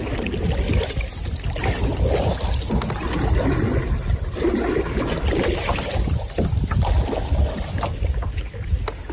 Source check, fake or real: real